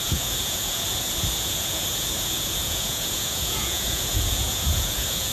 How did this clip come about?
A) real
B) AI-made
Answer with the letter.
B